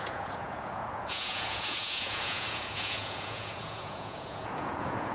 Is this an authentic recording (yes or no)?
no